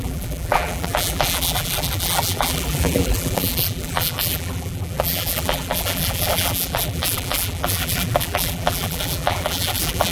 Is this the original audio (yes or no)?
no